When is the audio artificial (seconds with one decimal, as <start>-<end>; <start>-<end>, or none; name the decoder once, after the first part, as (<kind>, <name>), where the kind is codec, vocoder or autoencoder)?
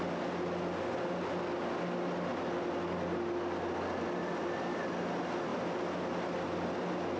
none